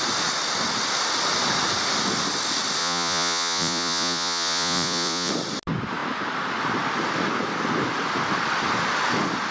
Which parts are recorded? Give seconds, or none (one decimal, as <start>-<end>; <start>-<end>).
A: 0.0-2.8; 5.3-9.5